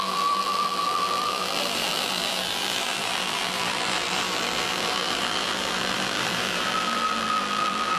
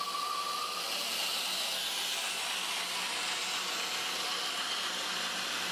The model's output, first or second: first